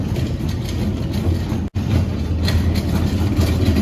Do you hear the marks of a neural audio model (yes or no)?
no